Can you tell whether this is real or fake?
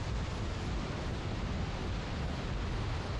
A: real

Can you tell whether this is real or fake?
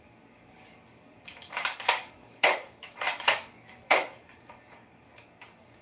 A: fake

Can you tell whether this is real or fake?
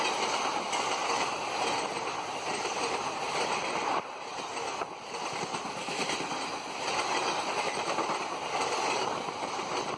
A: real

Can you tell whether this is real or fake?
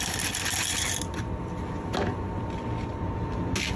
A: real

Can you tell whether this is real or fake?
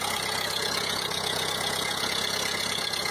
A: fake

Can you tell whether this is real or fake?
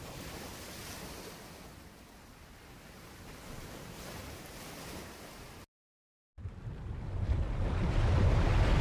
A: real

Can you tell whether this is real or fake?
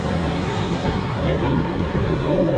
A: fake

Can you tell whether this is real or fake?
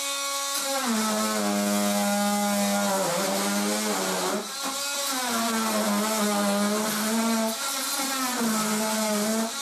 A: real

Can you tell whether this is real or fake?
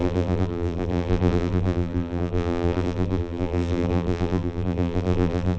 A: fake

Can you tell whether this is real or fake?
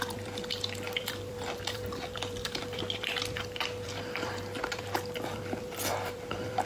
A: fake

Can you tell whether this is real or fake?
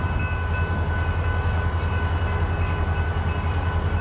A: real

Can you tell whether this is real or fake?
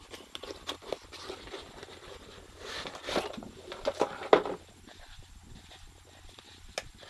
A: real